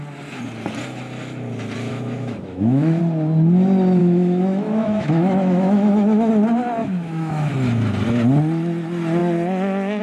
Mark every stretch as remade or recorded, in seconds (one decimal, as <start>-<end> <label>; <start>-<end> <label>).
0.0-1.9 recorded; 1.9-3.0 remade; 3.0-4.0 recorded; 4.0-6.3 remade; 6.3-6.8 recorded; 6.8-7.5 remade; 7.5-10.0 recorded